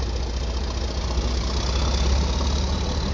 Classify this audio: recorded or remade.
recorded